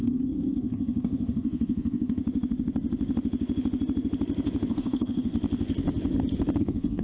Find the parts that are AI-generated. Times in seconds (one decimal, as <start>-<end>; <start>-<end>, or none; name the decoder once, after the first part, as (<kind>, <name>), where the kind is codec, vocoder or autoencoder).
0.0-2.2 (codec, SNAC); 4.7-5.3; 6.6-7.0